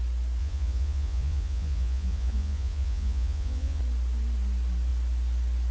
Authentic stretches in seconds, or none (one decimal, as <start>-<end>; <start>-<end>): 0.0-0.4; 3.8-5.7